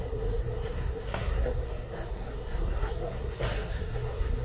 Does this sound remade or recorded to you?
remade